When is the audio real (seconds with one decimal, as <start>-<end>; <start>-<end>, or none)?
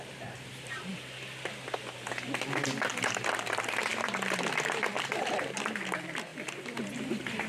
0.9-2.9